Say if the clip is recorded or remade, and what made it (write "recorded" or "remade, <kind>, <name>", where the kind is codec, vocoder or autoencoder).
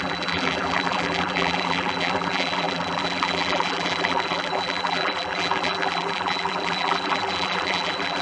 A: remade, vocoder, BigVGAN v2